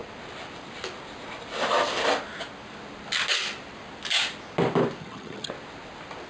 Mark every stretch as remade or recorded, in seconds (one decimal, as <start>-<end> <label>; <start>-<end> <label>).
0.0-5.0 recorded; 5.0-5.5 remade; 5.5-6.3 recorded